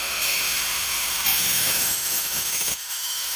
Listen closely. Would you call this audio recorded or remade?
remade